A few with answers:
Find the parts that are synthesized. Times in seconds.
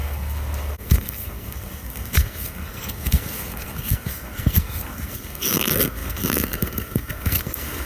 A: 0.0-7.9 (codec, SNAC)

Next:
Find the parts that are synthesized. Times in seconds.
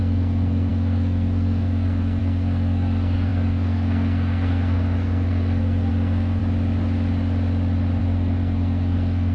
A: 0.0-6.4 (codec, SNAC); 8.0-9.3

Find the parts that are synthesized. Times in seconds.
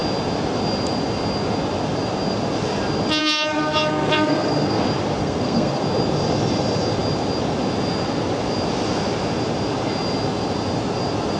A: 3.2-4.8 (codec, SNAC); 5.2-5.8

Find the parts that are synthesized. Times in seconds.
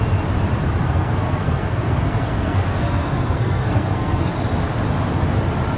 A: 0.8-4.3 (codec, SNAC)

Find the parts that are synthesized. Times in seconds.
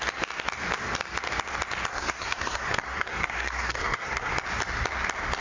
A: 1.9-4.3 (codec, SNAC)